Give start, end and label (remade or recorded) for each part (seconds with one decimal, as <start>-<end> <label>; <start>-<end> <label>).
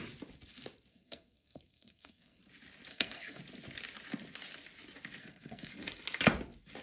0.0-0.9 recorded; 0.9-2.4 remade; 2.4-2.9 recorded; 2.9-3.4 remade; 3.4-5.2 recorded; 5.2-5.7 remade; 5.7-6.8 recorded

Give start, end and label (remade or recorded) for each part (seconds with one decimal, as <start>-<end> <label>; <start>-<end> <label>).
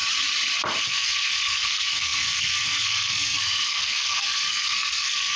0.0-0.8 recorded; 0.8-5.4 remade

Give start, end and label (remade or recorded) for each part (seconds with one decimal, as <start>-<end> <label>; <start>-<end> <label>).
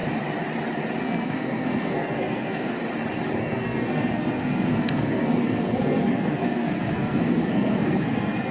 0.0-1.0 recorded; 1.0-2.8 remade; 2.8-3.4 recorded; 3.4-8.5 remade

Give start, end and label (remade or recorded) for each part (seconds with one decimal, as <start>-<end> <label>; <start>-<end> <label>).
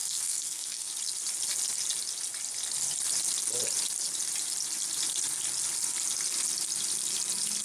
0.0-0.9 remade; 0.9-7.6 recorded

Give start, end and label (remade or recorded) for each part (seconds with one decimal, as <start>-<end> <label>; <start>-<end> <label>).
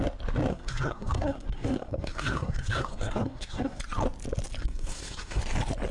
0.0-0.5 recorded; 0.5-3.8 remade; 3.8-4.6 recorded; 4.6-5.4 remade; 5.4-5.9 recorded